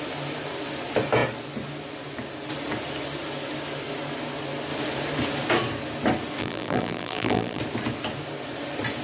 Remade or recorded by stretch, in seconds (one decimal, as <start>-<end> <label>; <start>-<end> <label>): 0.0-6.4 recorded; 6.4-7.6 remade; 7.6-9.0 recorded